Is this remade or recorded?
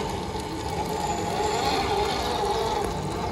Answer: recorded